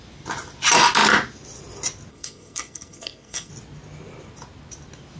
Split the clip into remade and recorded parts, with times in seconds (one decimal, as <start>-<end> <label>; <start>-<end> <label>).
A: 0.0-2.1 recorded; 2.1-3.5 remade; 3.5-5.2 recorded